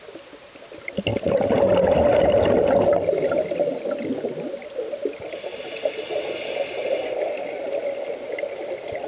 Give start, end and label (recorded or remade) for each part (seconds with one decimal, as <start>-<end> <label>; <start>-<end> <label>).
0.0-9.1 recorded